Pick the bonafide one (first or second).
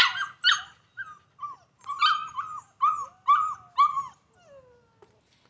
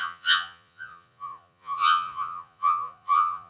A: first